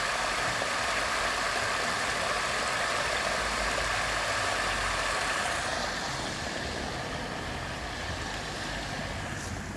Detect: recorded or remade recorded